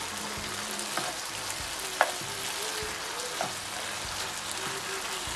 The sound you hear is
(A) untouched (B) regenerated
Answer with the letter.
A